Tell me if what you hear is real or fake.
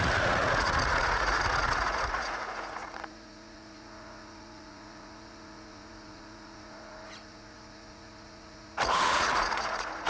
fake